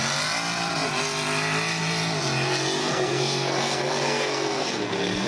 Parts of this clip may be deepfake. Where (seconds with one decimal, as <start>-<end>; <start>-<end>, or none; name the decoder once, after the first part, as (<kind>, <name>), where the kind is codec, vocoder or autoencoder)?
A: 2.8-5.3 (codec, SNAC)